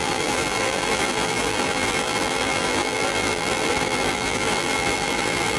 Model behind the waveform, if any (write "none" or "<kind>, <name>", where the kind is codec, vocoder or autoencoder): vocoder, BigVGAN v2